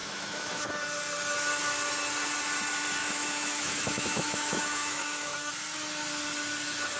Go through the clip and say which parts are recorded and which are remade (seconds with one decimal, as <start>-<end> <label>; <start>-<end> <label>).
0.0-0.7 remade; 0.7-3.0 recorded; 3.0-5.5 remade; 5.5-7.0 recorded